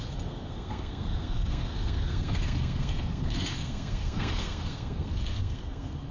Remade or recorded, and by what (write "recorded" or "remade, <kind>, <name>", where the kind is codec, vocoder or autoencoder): remade, codec, SNAC